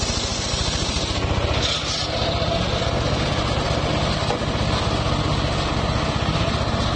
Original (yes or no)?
yes